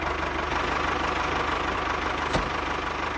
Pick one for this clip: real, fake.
real